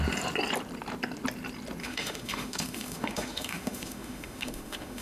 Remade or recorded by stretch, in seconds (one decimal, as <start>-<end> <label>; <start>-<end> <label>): 0.0-1.8 recorded; 1.8-5.0 remade